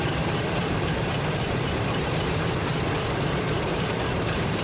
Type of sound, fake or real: fake